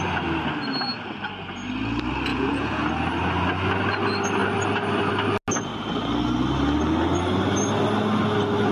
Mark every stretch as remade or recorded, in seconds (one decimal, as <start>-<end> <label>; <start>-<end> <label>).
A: 0.0-2.3 recorded; 2.3-2.9 remade; 2.9-8.7 recorded